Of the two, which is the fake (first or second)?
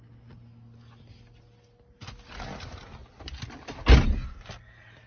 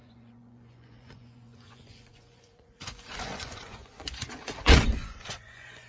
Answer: second